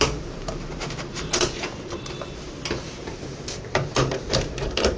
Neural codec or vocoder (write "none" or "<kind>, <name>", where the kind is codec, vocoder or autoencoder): vocoder, BigVGAN v2